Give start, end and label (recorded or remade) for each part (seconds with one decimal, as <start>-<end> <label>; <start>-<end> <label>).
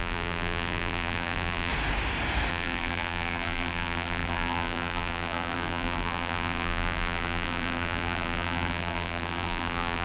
0.0-1.7 remade; 1.7-2.5 recorded; 2.5-10.0 remade